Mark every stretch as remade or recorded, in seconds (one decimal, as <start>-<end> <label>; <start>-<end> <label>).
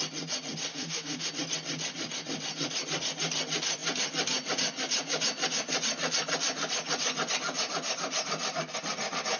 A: 0.0-0.7 recorded; 0.7-1.3 remade; 1.3-9.4 recorded